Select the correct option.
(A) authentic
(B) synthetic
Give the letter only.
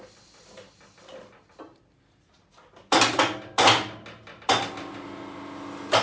A